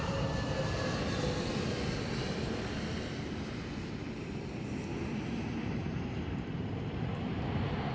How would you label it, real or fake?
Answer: real